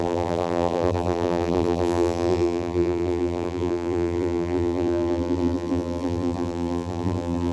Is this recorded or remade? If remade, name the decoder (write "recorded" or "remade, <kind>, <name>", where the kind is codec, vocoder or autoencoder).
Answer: remade, vocoder, BigVGAN v2